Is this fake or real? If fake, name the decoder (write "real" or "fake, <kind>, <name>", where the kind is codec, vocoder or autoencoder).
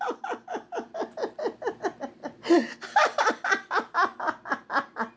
real